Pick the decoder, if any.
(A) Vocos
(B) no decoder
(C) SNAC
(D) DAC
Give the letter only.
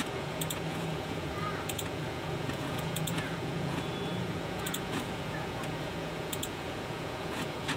A